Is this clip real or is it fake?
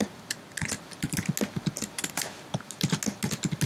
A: real